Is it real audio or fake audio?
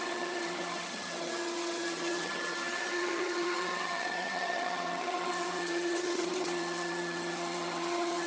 fake